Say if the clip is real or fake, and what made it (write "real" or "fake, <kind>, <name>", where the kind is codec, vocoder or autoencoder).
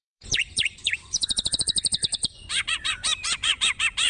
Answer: fake, vocoder, Vocos